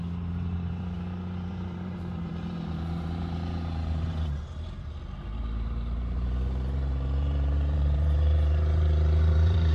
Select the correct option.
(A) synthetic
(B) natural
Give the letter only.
A